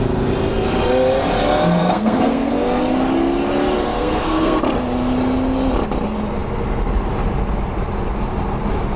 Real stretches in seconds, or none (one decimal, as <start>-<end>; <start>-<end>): 0.0-1.8; 2.5-4.0; 4.6-9.0